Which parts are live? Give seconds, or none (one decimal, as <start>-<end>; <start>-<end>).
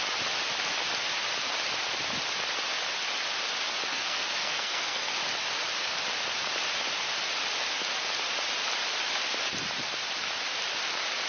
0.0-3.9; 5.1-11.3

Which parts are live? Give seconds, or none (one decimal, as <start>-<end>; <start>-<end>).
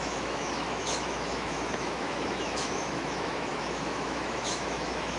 none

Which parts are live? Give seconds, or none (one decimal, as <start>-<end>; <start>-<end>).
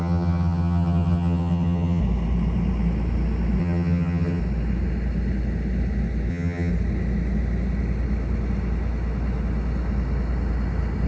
2.0-3.6; 4.4-6.3; 6.7-11.1